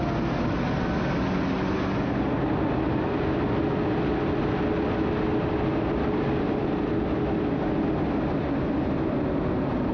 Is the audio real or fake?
real